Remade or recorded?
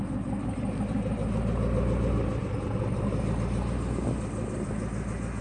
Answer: recorded